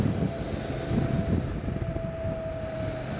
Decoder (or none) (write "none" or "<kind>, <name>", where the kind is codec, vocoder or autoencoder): none